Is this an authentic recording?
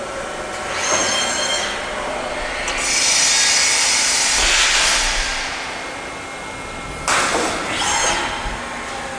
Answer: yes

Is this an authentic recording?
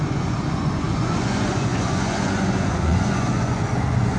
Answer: no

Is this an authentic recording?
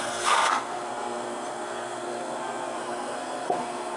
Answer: no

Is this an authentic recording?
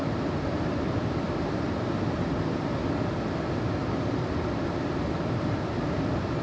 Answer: yes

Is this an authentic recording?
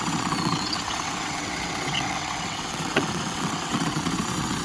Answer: no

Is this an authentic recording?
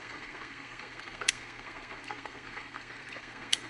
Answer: no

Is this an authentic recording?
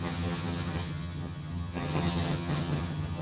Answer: no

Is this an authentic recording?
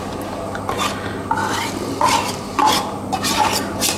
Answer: yes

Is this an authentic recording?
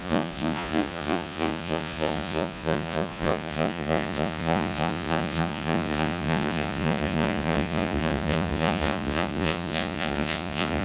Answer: no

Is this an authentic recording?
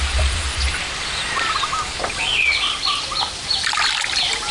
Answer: no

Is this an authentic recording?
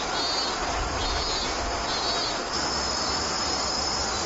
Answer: yes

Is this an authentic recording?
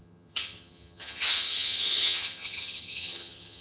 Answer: no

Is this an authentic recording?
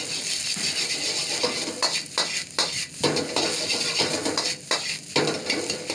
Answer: yes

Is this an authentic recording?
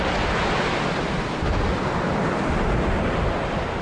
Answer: yes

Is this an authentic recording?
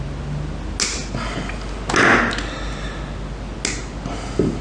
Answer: yes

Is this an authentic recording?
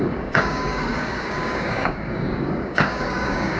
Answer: no